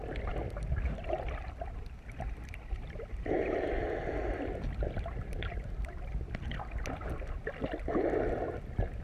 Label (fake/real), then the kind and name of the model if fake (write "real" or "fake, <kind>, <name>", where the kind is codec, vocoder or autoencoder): fake, vocoder, BigVGAN v2